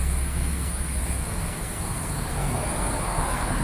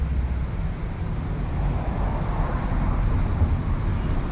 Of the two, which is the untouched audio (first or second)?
second